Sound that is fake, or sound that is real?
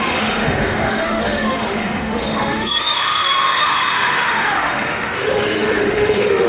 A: fake